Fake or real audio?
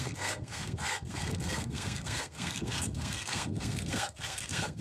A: fake